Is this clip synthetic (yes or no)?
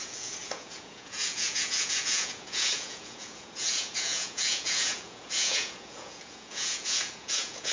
yes